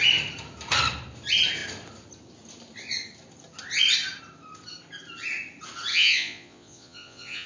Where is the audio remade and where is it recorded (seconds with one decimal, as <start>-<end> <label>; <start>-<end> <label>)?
0.0-5.9 recorded; 5.9-7.5 remade